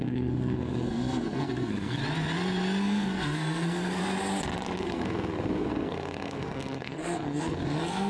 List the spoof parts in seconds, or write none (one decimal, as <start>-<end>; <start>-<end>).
0.0-2.0; 2.8-4.0; 4.8-8.1